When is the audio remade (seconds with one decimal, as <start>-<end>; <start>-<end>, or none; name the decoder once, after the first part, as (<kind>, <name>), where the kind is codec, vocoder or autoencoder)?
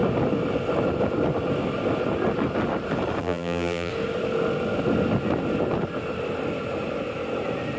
3.2-3.9 (vocoder, BigVGAN v2)